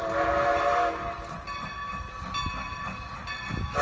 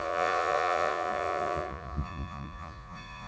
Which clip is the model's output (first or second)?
second